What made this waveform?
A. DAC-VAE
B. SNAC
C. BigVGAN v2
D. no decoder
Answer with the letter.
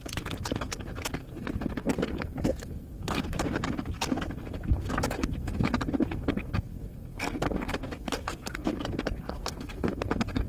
B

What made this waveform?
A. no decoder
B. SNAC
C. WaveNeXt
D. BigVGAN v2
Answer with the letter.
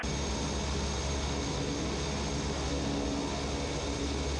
A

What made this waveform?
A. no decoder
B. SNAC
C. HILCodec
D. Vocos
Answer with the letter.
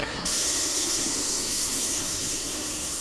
B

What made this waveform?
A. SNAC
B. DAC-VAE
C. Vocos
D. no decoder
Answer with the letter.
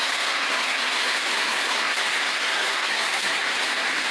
A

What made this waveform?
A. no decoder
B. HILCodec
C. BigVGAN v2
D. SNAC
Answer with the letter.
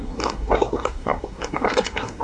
D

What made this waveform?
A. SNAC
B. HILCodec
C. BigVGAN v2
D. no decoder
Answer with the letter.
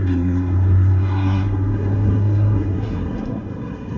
A